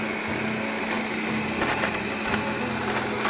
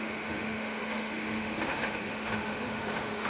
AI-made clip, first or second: second